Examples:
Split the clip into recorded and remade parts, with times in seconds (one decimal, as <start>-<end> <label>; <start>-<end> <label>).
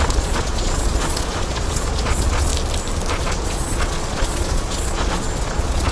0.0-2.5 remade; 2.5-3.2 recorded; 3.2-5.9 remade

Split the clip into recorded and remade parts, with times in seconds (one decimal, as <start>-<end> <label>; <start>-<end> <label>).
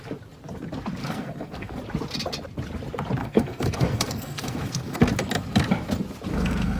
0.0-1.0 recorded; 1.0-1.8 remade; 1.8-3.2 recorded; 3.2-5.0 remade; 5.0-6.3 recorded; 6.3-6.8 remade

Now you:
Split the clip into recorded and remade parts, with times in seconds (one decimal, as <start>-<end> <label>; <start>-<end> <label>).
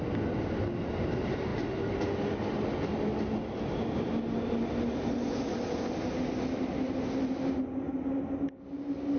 0.0-9.2 recorded